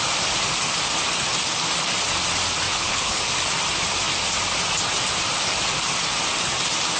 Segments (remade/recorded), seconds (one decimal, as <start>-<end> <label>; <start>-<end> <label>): 0.0-2.7 recorded; 2.7-3.2 remade; 3.2-7.0 recorded